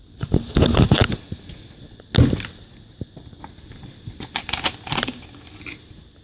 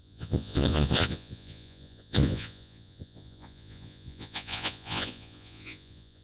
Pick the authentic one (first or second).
first